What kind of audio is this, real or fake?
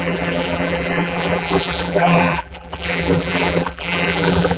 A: fake